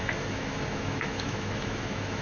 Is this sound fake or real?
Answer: fake